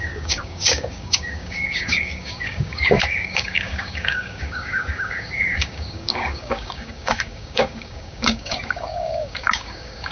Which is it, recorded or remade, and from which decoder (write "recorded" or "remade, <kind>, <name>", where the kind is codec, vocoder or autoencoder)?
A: remade, codec, DAC